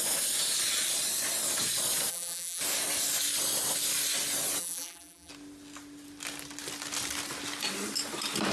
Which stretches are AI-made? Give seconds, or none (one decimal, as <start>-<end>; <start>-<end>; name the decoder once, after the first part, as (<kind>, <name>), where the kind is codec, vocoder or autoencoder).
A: 2.1-2.6 (vocoder, BigVGAN v2); 4.6-5.3